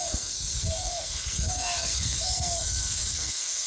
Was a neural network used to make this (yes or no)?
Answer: yes